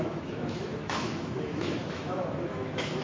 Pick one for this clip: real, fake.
fake